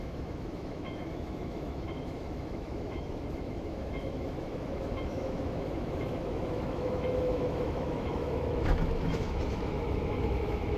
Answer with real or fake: fake